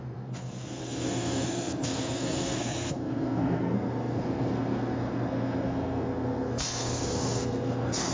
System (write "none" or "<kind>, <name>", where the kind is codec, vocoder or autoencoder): codec, SNAC